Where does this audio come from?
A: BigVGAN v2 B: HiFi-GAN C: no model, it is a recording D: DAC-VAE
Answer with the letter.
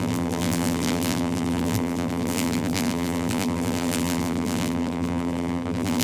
A